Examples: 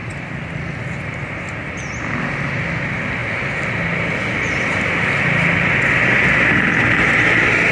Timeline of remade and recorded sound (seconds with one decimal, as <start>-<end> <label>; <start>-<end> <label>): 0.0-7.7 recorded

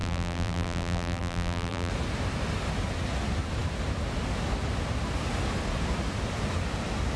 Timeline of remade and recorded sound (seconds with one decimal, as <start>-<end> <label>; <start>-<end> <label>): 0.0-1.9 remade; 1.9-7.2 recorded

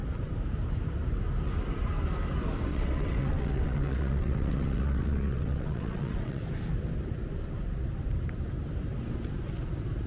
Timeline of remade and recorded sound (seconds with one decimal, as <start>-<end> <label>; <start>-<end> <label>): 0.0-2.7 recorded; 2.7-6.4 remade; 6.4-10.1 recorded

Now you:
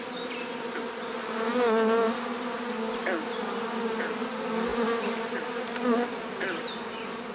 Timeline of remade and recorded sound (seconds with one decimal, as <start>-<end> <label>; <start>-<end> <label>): 0.0-7.3 recorded